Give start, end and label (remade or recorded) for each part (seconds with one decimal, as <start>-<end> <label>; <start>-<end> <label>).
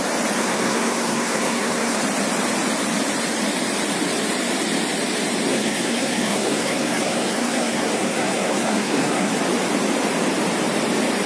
0.0-0.4 recorded; 0.4-2.0 remade; 2.0-5.5 recorded; 5.5-9.3 remade; 9.3-11.3 recorded